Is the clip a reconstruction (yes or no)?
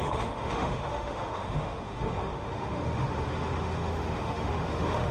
yes